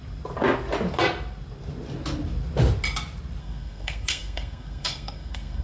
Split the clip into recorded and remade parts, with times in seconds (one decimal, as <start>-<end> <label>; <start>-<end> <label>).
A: 0.0-3.4 recorded; 3.4-5.6 remade